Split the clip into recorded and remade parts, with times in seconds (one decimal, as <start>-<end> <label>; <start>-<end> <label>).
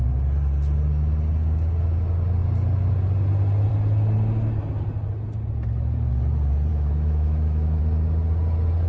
0.0-6.7 recorded; 6.7-7.8 remade; 7.8-8.9 recorded